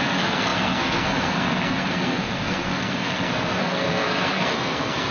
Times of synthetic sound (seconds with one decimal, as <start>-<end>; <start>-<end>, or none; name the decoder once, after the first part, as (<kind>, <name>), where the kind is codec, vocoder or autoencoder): 0.0-5.1 (codec, SNAC)